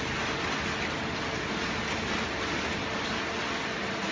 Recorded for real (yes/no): yes